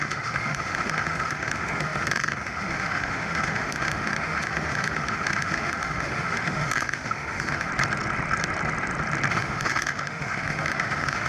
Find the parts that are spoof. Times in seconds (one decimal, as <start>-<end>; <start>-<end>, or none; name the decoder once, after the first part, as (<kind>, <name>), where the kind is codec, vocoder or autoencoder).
0.0-7.7 (autoencoder, DAC-VAE); 9.3-11.3